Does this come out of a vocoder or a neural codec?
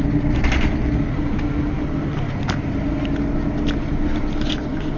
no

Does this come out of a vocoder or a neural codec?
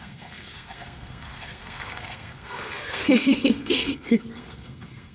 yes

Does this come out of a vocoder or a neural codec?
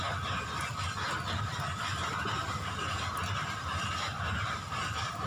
no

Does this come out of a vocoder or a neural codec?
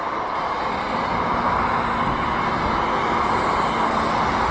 no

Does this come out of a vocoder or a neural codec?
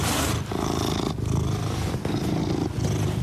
no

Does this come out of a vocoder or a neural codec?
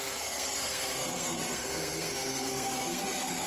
yes